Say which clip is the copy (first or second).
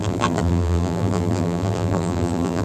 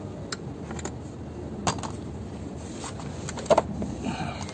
first